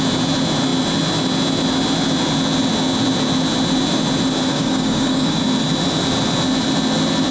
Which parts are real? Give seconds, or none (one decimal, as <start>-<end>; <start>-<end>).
0.0-4.5; 5.4-7.3